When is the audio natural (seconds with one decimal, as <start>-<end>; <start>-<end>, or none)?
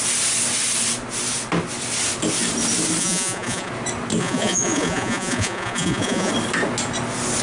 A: 0.0-3.0; 3.7-4.2; 6.3-7.4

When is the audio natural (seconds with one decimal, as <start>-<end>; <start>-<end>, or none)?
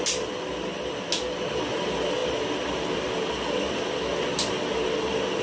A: 0.0-5.4